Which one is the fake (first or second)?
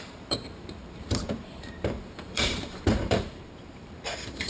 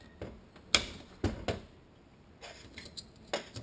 first